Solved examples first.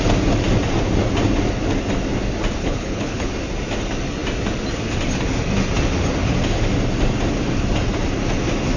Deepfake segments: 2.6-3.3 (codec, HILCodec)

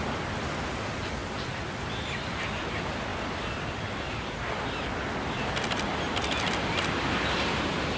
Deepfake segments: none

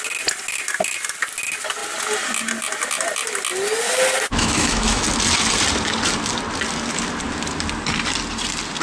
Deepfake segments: 4.3-5.0 (autoencoder, DAC-VAE)

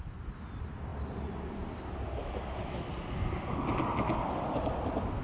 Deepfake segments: 2.2-2.9 (autoencoder, DAC-VAE)

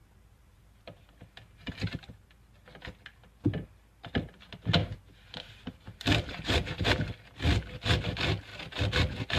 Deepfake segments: 0.0-2.3 (vocoder, BigVGAN v2); 4.8-6.9

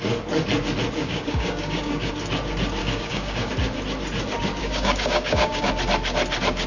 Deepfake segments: 1.0-2.1 (codec, DAC); 2.8-3.5; 4.6-5.7

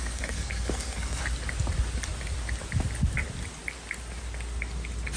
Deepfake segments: 0.0-1.2 (codec, SNAC)